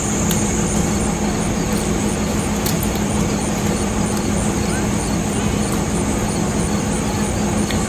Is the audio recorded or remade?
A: recorded